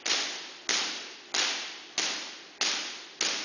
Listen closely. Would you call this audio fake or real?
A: real